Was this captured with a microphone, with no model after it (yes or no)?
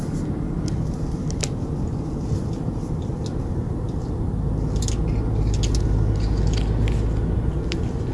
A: yes